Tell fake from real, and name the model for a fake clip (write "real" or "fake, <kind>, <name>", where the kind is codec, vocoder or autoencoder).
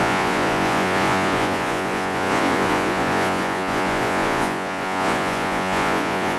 fake, vocoder, Vocos